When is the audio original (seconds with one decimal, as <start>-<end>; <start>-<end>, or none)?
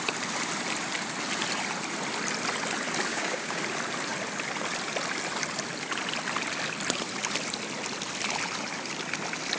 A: 0.0-3.1; 3.6-9.6